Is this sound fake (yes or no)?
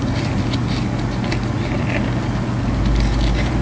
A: no